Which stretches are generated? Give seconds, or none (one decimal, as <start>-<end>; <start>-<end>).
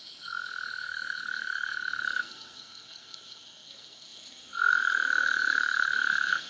0.0-6.5